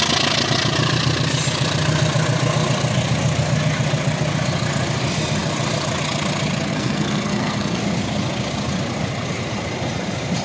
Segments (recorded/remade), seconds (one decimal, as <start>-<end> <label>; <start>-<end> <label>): 0.0-6.7 recorded; 6.7-7.8 remade; 7.8-10.4 recorded